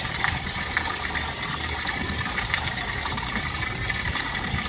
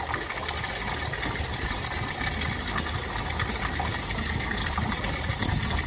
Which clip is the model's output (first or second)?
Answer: first